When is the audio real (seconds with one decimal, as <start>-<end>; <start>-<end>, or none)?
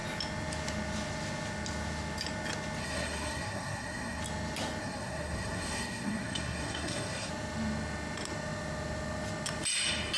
0.0-2.8; 4.2-4.8; 7.3-10.2